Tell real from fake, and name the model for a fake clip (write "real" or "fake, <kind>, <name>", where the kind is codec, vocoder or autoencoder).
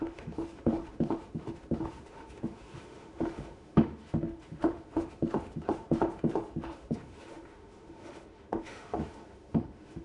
fake, autoencoder, DAC-VAE